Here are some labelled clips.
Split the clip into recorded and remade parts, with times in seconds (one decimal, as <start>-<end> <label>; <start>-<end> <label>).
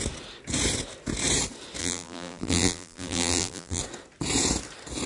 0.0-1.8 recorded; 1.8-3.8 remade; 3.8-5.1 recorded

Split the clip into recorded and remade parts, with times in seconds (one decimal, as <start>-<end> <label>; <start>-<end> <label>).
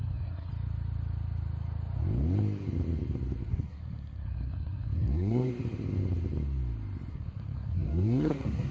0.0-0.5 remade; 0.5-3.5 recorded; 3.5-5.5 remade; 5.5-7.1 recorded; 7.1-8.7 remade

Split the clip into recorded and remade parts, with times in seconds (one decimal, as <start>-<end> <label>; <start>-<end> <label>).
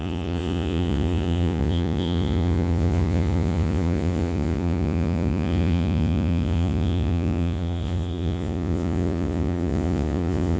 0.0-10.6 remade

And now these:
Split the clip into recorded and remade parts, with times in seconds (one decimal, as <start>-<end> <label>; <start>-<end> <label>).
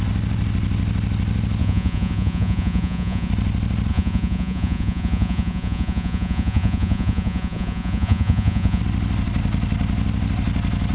0.0-1.6 recorded; 1.6-3.3 remade; 3.3-3.9 recorded; 3.9-8.8 remade; 8.8-10.9 recorded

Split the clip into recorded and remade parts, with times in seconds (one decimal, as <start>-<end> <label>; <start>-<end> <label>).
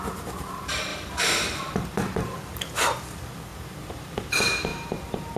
0.0-0.9 recorded; 0.9-2.6 remade; 2.6-3.5 recorded; 3.5-4.3 remade; 4.3-4.7 recorded; 4.7-5.4 remade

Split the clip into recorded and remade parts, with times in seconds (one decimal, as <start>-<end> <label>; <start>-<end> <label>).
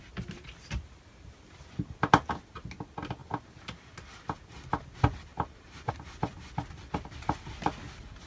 0.0-5.3 recorded; 5.3-5.9 remade; 5.9-8.3 recorded